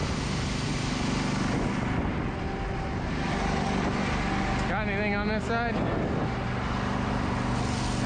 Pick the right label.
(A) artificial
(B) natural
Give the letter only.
B